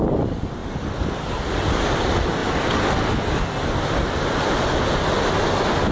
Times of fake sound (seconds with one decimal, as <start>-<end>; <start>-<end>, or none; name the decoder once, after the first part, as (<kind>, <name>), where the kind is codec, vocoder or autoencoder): none